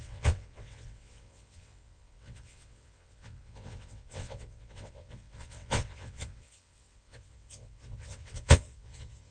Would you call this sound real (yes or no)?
no